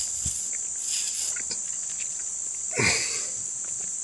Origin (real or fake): real